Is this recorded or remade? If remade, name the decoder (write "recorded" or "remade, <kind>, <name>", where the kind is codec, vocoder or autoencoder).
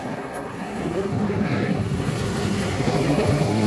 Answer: remade, codec, SNAC